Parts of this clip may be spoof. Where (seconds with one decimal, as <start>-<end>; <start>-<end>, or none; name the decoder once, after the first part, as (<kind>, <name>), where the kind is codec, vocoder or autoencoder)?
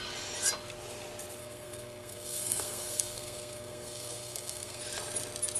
1.4-4.8 (codec, SNAC)